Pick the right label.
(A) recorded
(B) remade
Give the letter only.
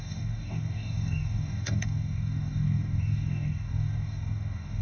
B